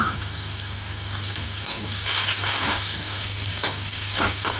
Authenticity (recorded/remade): remade